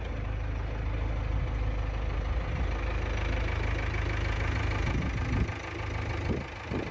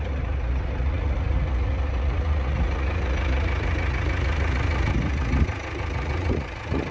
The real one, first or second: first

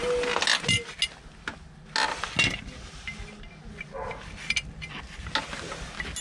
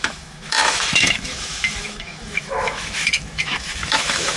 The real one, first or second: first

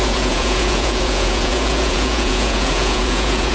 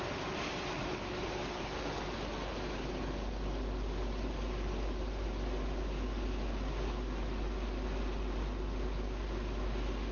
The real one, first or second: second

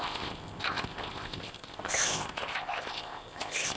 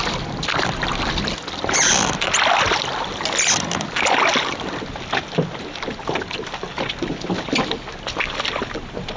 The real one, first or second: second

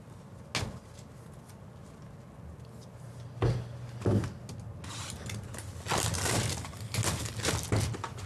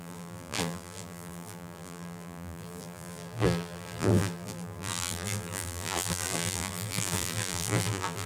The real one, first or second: first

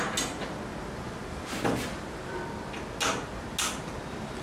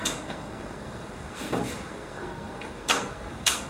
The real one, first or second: first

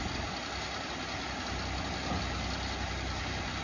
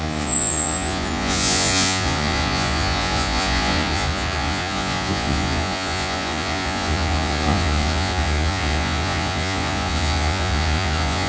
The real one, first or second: first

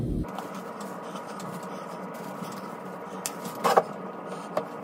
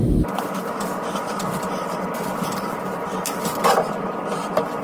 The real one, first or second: first